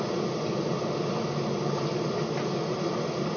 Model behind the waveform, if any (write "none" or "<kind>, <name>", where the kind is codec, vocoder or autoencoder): none